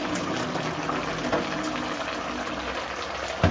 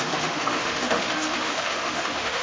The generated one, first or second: second